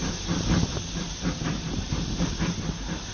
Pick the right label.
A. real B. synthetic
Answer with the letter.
A